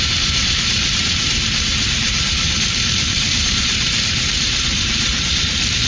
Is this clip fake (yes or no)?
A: yes